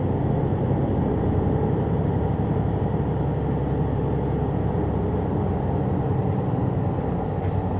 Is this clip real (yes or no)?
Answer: yes